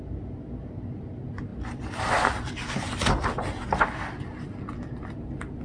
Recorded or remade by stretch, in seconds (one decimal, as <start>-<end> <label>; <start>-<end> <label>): 0.0-5.6 recorded